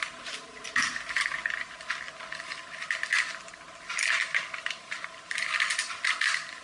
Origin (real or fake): real